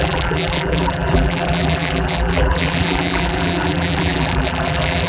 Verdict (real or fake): fake